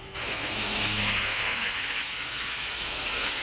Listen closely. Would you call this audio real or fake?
fake